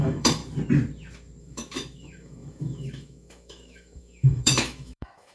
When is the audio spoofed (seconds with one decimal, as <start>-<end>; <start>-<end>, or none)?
0.0-0.4; 1.4-5.3